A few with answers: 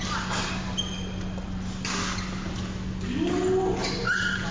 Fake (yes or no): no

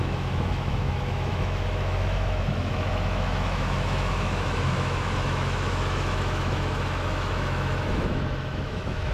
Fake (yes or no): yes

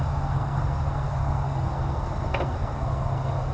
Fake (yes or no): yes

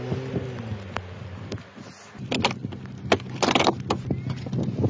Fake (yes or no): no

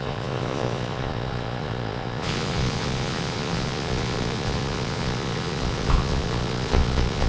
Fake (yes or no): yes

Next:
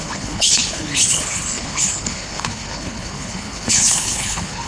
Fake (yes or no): yes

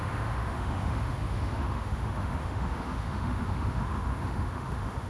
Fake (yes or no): yes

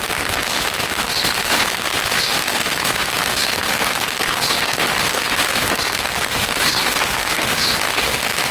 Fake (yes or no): yes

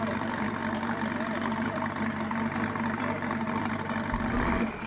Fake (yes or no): yes